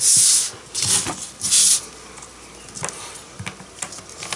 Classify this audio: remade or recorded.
recorded